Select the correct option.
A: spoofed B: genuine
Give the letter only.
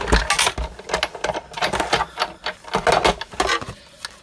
B